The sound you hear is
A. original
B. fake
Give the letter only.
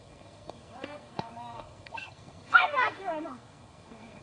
B